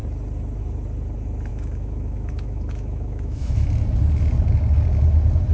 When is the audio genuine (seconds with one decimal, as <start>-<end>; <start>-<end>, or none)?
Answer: 0.0-1.5; 3.7-5.5